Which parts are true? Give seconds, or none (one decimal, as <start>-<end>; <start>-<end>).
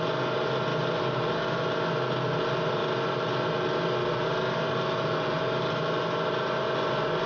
0.0-7.3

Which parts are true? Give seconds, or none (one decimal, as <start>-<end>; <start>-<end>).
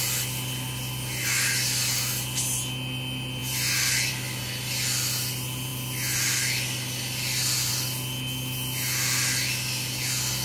0.0-10.4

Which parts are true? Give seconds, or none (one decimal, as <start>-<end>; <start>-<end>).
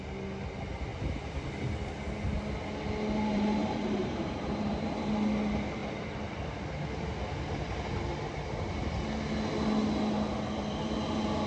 0.0-3.3; 4.7-11.5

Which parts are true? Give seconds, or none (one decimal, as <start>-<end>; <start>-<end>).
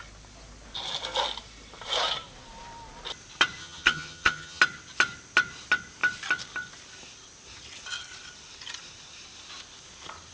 0.0-3.6; 4.6-10.3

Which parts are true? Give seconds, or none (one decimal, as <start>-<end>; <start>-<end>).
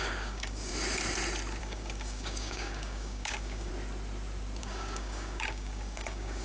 0.7-1.6; 3.7-4.6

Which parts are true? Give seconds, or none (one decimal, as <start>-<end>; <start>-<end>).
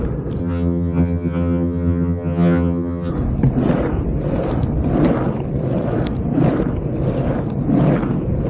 0.0-0.4; 3.1-8.5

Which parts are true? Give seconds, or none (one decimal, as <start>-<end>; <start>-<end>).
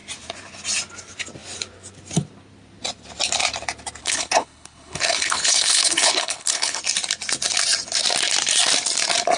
0.0-4.0; 6.8-9.4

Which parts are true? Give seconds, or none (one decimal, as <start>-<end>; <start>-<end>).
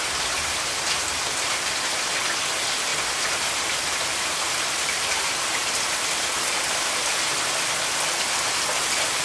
0.0-2.9; 5.1-9.2